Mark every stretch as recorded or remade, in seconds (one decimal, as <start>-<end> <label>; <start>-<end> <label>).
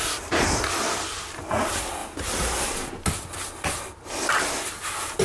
0.0-5.2 recorded